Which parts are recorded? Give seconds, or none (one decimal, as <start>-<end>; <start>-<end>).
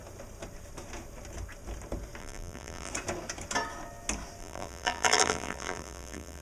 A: 0.0-2.2; 2.9-4.4